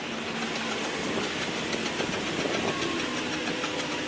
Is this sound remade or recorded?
recorded